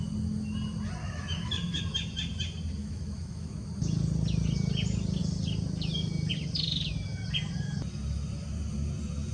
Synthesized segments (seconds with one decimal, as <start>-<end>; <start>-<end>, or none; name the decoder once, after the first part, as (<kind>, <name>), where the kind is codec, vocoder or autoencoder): 1.0-1.8 (autoencoder, DAC-VAE); 2.8-3.7